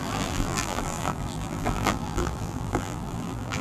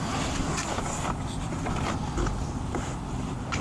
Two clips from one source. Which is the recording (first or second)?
second